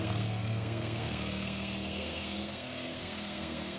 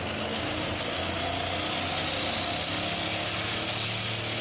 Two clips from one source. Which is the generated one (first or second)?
first